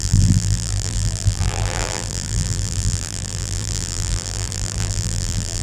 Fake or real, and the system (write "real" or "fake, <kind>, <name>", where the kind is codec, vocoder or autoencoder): fake, vocoder, BigVGAN v2